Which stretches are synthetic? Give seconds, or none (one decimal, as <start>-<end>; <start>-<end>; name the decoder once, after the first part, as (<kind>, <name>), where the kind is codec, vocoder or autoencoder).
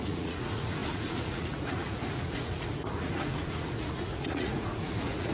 0.0-5.3 (vocoder, Vocos)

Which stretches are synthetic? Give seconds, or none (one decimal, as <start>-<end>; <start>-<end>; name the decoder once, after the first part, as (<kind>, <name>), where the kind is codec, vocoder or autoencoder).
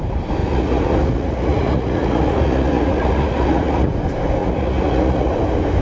0.4-3.9 (vocoder, Vocos); 4.4-5.3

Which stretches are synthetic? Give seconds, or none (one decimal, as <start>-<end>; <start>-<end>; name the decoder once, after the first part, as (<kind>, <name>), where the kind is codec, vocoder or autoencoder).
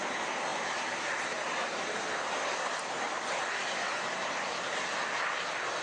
none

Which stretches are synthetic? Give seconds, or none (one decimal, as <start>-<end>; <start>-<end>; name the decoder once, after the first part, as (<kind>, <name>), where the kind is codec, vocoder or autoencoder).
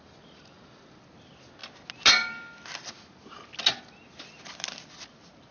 none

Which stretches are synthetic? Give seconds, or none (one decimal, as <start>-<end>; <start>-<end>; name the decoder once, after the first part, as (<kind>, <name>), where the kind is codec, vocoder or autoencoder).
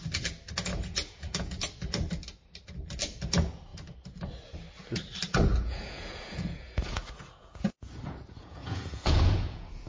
0.7-1.6 (vocoder, Vocos); 5.5-9.9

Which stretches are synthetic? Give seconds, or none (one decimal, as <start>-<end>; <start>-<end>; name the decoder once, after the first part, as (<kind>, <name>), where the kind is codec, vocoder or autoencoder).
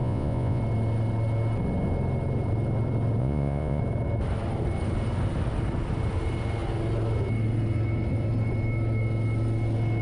0.0-0.6 (vocoder, Vocos); 3.2-3.8